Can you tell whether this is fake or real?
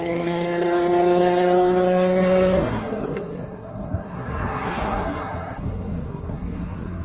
fake